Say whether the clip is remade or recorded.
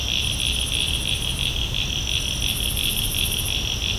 recorded